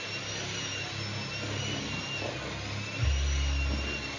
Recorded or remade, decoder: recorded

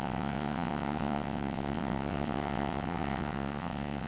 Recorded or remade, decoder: remade, vocoder, WaveNeXt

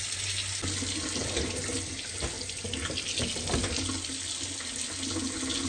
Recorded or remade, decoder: recorded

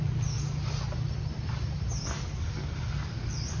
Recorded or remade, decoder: recorded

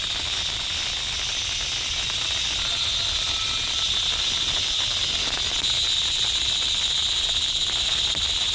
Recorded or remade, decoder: recorded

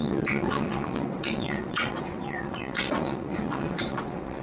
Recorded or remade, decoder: remade, vocoder, WaveNeXt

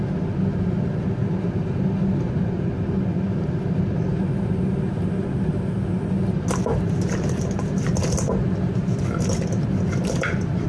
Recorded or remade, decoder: recorded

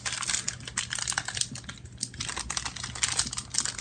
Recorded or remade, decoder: recorded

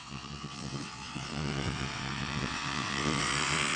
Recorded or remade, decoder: remade, vocoder, WaveNeXt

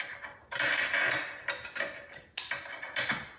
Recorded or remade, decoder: recorded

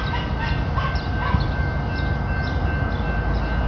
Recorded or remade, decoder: recorded